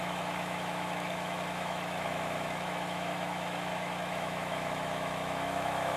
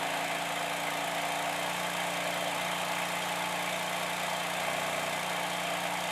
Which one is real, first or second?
second